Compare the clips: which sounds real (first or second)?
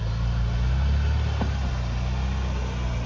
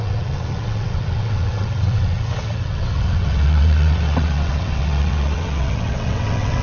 first